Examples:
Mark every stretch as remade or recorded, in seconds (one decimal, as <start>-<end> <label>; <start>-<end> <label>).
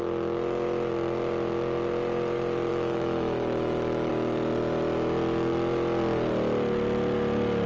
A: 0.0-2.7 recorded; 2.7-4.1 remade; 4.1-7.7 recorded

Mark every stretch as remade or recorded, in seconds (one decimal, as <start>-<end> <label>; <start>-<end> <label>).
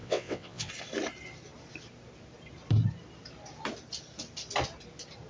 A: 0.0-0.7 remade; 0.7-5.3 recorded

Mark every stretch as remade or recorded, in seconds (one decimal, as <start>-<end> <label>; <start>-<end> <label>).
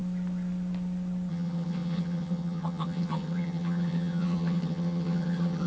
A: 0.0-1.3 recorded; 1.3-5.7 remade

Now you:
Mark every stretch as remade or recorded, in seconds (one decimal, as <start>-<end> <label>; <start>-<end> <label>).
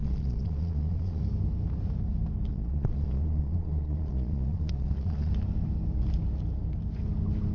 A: 0.0-1.2 remade; 1.2-2.5 recorded; 2.5-5.3 remade; 5.3-7.5 recorded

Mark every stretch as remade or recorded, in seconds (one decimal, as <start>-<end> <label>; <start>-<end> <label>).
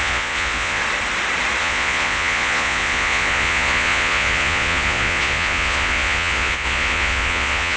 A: 0.0-0.8 remade; 0.8-1.6 recorded; 1.6-7.8 remade